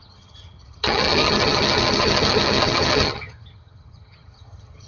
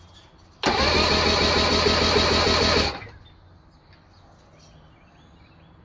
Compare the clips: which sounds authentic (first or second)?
second